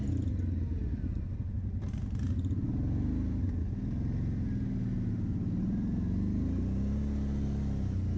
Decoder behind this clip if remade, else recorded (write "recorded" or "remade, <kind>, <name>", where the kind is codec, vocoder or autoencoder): recorded